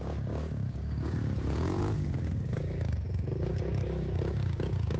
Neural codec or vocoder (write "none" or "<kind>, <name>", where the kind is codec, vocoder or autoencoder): codec, DAC